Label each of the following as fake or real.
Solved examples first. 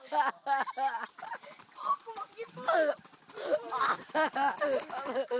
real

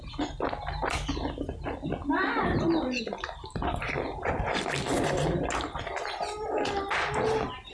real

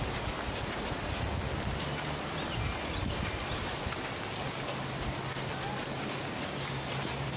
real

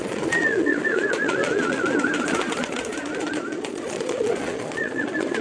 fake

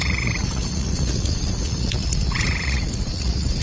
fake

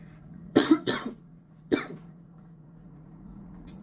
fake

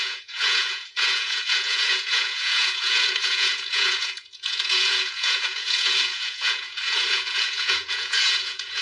fake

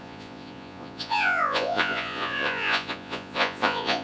fake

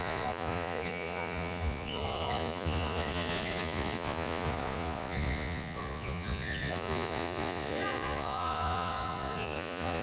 fake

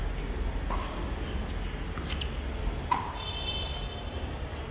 real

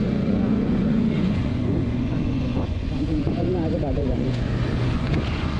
fake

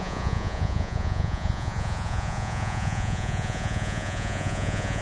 fake